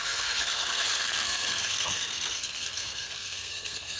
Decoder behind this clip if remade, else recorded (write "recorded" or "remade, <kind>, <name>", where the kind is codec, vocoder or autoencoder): remade, codec, SNAC